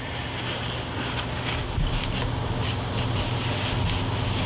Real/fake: real